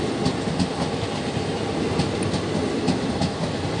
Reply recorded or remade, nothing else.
recorded